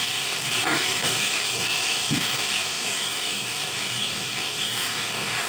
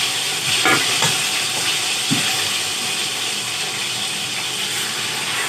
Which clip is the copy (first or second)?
first